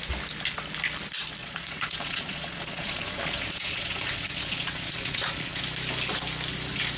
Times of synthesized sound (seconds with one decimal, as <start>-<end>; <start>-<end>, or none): 1.4-5.6